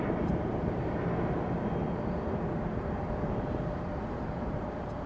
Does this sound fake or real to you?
fake